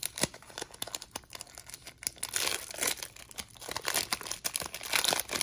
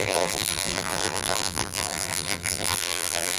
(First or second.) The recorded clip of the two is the first